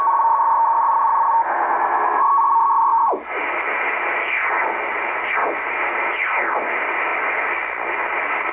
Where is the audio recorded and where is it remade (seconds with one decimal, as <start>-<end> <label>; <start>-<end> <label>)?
0.0-5.4 recorded; 5.4-6.1 remade; 6.1-8.5 recorded